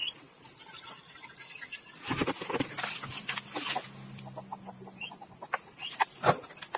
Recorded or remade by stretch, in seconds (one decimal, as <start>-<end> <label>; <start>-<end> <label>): 0.0-0.6 remade; 0.6-6.8 recorded